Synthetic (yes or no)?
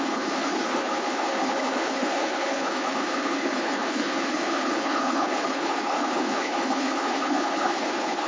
yes